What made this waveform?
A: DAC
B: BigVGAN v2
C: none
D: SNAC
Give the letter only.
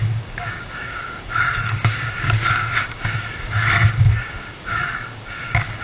A